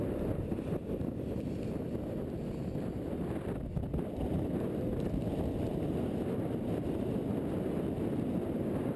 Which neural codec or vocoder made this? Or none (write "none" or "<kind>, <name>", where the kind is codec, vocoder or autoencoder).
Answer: none